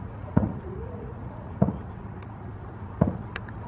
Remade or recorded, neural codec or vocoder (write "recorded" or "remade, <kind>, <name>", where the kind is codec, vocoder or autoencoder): remade, vocoder, Vocos